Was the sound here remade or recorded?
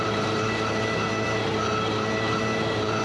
remade